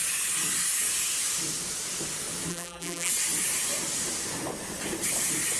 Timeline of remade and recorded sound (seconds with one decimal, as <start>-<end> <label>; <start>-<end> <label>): 0.0-2.5 recorded; 2.5-3.1 remade; 3.1-5.6 recorded